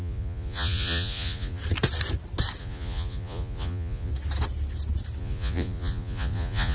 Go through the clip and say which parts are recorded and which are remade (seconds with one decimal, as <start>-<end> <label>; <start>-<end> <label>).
0.0-1.6 remade; 1.6-2.6 recorded; 2.6-4.1 remade; 4.1-5.2 recorded; 5.2-6.7 remade